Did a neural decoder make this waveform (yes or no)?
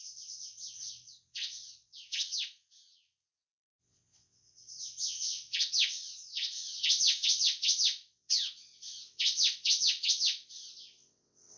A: yes